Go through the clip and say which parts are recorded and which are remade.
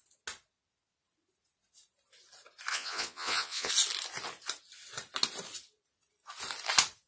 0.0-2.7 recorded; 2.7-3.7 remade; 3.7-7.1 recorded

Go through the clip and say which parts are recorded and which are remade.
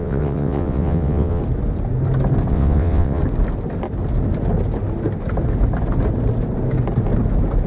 0.0-1.4 remade; 1.4-2.5 recorded; 2.5-3.2 remade; 3.2-7.7 recorded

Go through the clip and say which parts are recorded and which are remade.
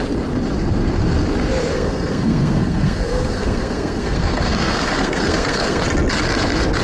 0.0-1.7 recorded; 1.7-5.8 remade; 5.8-6.8 recorded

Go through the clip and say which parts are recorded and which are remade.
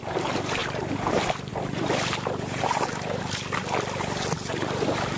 0.0-0.6 recorded; 0.6-1.1 remade; 1.1-1.5 recorded; 1.5-3.2 remade; 3.2-4.5 recorded; 4.5-5.2 remade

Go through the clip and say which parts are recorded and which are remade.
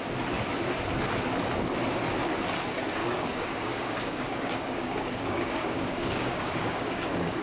0.0-3.0 recorded; 3.0-7.4 remade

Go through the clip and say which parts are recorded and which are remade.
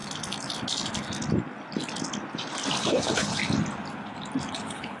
0.0-2.8 recorded; 2.8-3.4 remade; 3.4-4.5 recorded; 4.5-5.0 remade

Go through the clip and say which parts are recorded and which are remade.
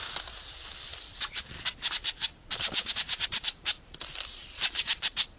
0.0-0.9 recorded; 0.9-1.7 remade; 1.7-2.2 recorded; 2.2-5.4 remade